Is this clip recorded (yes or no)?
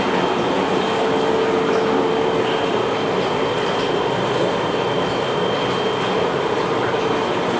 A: yes